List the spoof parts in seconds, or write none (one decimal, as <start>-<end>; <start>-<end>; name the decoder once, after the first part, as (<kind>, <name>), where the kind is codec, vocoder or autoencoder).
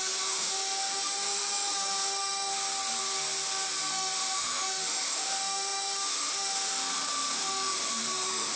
0.0-2.5 (autoencoder, DAC-VAE); 3.9-8.6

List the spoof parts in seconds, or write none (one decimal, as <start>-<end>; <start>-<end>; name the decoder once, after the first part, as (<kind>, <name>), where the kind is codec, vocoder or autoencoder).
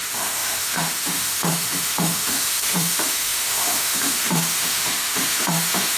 0.0-6.0 (autoencoder, DAC-VAE)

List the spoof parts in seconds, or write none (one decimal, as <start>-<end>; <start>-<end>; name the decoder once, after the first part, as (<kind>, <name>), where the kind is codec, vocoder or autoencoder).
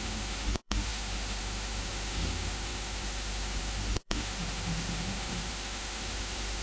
0.0-6.6 (autoencoder, DAC-VAE)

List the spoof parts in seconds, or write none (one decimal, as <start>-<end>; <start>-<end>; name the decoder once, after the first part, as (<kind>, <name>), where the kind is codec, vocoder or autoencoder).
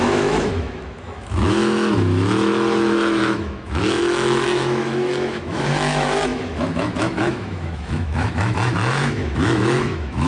0.0-10.3 (autoencoder, DAC-VAE)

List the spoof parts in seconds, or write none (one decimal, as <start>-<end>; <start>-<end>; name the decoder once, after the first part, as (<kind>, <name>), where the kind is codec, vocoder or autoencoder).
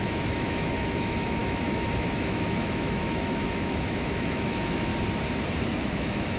0.0-4.9 (autoencoder, DAC-VAE); 5.7-6.4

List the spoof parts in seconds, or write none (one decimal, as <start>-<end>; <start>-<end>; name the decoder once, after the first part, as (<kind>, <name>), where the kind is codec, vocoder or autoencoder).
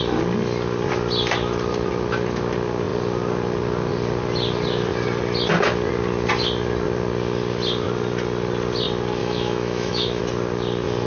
9.2-10.2 (autoencoder, DAC-VAE)